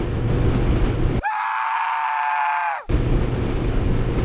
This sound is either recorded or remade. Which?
recorded